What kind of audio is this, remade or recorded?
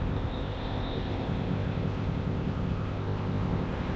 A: remade